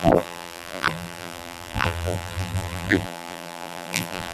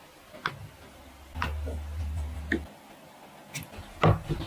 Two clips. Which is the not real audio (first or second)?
first